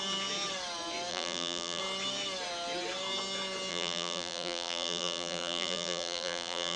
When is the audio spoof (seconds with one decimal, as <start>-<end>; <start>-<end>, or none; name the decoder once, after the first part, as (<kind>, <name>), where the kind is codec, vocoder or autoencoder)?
1.1-1.8 (vocoder, BigVGAN v2); 3.7-6.8